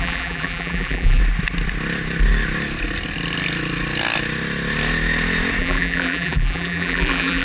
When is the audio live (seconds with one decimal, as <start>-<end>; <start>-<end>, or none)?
1.2-5.6